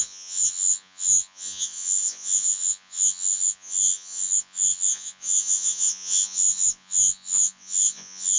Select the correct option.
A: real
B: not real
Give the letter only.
B